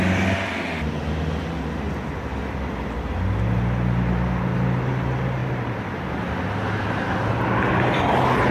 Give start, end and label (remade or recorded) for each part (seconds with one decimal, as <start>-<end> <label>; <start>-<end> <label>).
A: 0.0-5.4 recorded; 5.4-6.1 remade; 6.1-8.5 recorded